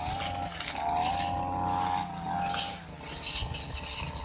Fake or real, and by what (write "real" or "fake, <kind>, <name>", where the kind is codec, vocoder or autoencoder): real